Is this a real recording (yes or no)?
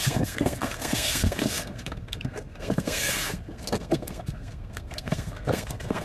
no